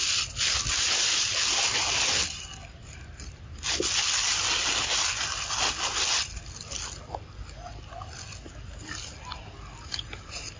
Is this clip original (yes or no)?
yes